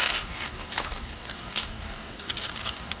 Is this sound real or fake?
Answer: fake